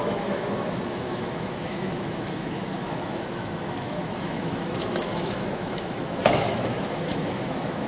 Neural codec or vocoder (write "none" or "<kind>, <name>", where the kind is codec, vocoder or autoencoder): autoencoder, DAC-VAE